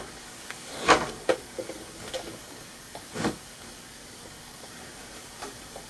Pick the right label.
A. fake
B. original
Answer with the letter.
A